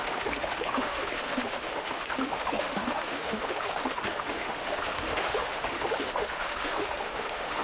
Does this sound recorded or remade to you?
remade